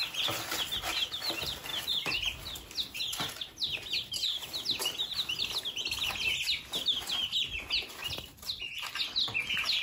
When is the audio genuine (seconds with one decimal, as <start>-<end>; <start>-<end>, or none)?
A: 0.0-9.8

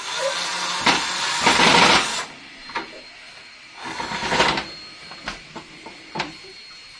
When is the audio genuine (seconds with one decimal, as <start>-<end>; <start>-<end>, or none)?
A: 0.0-7.0